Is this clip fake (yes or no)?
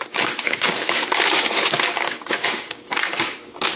yes